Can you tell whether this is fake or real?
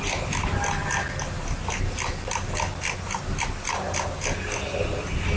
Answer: real